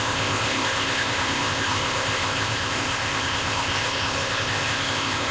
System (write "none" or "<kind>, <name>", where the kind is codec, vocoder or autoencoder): codec, ZipCodec